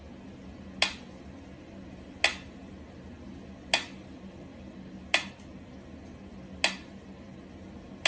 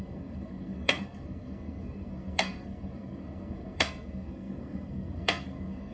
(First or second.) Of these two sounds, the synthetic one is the second